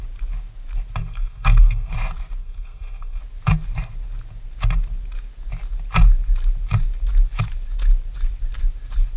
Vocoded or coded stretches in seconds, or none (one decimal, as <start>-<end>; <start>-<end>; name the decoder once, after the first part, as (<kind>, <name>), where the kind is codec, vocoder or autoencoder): 1.0-1.9 (codec, SNAC); 2.4-3.2